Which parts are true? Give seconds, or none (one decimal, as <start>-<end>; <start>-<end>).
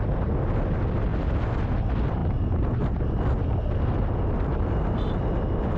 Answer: 0.0-1.1; 1.7-5.8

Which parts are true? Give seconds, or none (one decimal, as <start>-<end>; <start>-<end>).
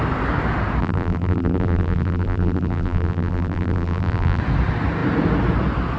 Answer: 0.0-0.8; 4.4-6.0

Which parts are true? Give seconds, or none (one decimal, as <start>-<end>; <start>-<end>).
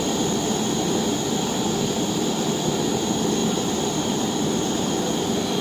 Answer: 0.0-3.4; 4.9-5.6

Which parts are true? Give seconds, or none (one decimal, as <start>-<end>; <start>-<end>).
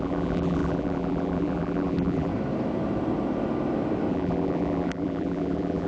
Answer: 2.3-4.1